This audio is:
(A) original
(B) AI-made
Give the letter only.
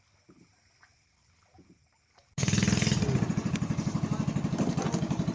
A